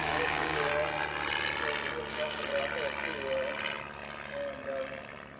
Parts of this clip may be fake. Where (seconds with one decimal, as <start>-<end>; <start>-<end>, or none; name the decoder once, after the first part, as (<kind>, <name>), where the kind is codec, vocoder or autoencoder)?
0.0-0.7 (codec, DAC); 2.1-2.5